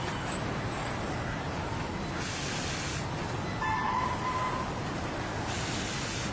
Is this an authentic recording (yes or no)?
yes